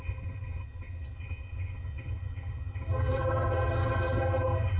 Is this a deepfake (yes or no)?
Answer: yes